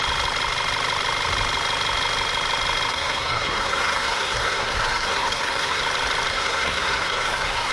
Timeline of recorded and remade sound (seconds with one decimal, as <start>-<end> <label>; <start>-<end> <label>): 0.0-2.9 recorded; 2.9-5.8 remade; 5.8-6.3 recorded; 6.3-7.7 remade